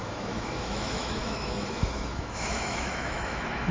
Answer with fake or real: fake